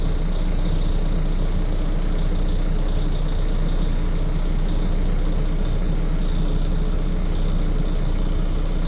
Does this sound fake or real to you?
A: real